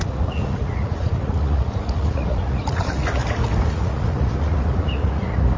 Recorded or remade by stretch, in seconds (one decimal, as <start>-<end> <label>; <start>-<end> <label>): 0.0-3.2 remade; 3.2-3.7 recorded; 3.7-5.6 remade